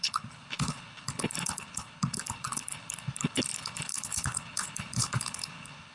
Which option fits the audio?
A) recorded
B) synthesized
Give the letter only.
B